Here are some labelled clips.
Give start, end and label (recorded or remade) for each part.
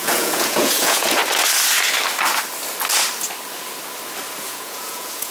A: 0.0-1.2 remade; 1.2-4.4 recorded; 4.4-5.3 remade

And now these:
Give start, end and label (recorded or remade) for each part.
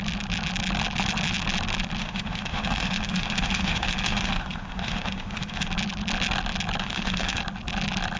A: 0.0-2.0 recorded; 2.0-5.7 remade; 5.7-6.8 recorded; 6.8-7.4 remade; 7.4-8.2 recorded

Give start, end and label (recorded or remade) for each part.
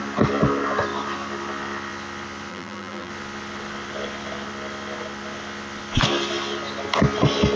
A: 0.0-2.5 recorded; 2.5-3.1 remade; 3.1-7.6 recorded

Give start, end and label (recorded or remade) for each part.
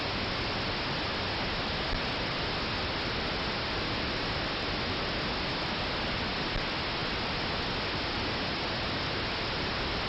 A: 0.0-10.1 recorded